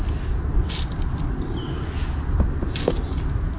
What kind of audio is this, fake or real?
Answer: real